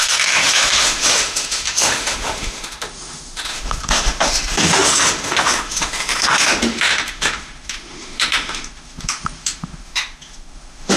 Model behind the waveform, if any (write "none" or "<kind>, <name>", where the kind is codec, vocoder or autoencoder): autoencoder, DAC-VAE